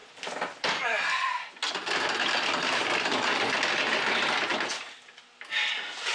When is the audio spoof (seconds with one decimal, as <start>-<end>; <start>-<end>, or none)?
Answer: 0.0-3.5; 4.5-5.3